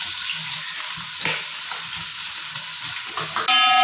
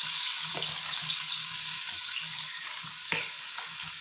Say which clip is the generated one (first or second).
second